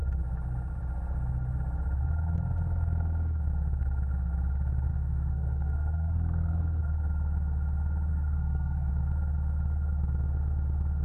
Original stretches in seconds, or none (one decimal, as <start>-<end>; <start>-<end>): 0.0-4.9; 6.8-8.1; 8.9-11.0